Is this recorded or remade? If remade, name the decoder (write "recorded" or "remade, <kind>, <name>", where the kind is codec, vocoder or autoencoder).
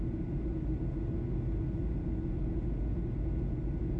recorded